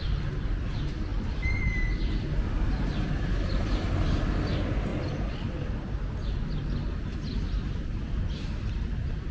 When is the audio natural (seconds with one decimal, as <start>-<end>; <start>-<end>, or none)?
0.0-1.1; 2.1-4.9; 5.9-9.3